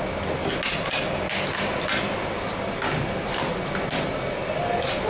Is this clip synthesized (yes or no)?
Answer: no